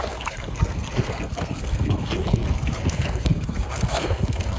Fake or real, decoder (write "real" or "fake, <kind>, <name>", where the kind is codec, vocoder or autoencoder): fake, codec, SNAC